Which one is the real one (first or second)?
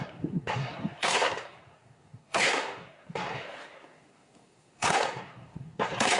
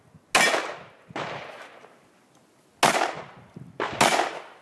second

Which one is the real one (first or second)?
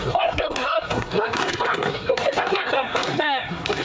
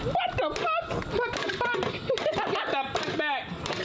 second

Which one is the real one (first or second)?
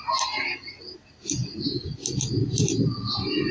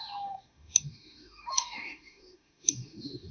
first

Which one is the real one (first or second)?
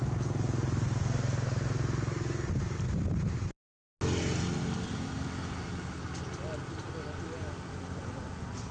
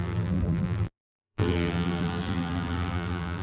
first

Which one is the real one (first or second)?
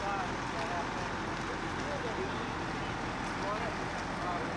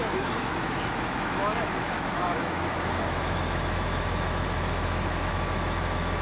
first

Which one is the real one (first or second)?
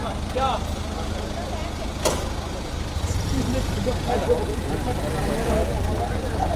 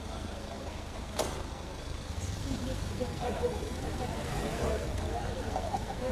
first